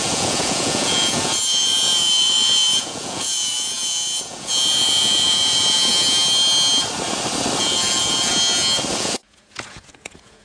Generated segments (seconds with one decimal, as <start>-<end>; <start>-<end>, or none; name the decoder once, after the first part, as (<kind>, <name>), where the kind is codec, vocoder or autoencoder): 0.0-5.9 (vocoder, Vocos); 7.6-8.3; 8.9-10.4